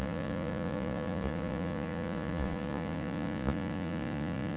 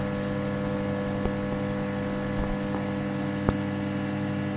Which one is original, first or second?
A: second